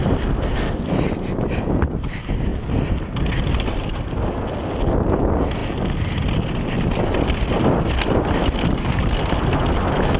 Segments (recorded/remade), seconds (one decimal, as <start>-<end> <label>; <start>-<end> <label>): 0.0-10.2 recorded